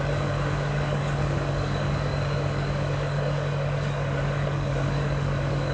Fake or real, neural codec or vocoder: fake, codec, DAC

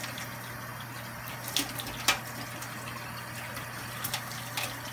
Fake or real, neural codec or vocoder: real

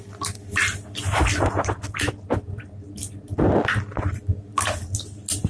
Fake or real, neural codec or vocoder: real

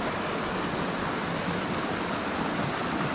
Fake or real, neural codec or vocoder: real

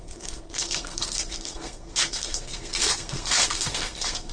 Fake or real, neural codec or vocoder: fake, codec, SNAC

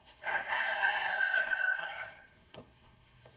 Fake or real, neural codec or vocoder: fake, codec, SNAC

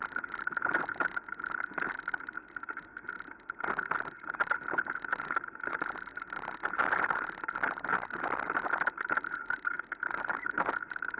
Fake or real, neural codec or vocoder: real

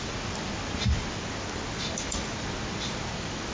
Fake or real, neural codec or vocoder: real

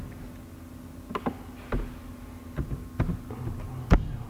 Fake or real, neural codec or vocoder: real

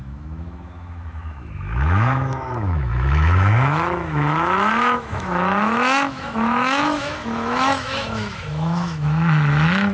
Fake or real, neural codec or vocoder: fake, autoencoder, DAC-VAE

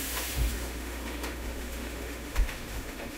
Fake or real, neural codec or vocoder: fake, autoencoder, DAC-VAE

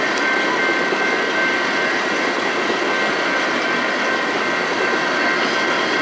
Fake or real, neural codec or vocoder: real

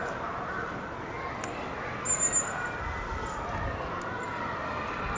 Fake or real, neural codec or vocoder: real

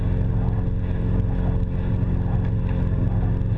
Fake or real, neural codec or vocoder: real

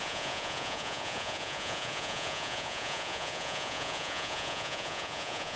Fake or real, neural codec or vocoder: fake, vocoder, Vocos